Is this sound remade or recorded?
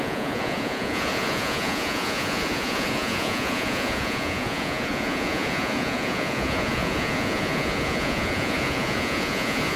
remade